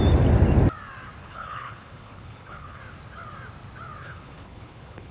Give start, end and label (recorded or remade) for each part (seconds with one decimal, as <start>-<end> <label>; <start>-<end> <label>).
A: 0.0-1.2 recorded; 1.2-2.8 remade; 2.8-4.0 recorded; 4.0-5.1 remade